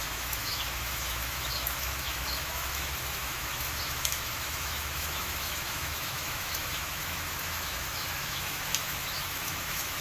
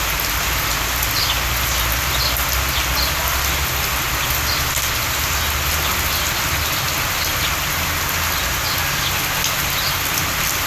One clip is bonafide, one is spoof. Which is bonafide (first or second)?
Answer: second